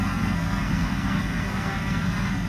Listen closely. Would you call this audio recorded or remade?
remade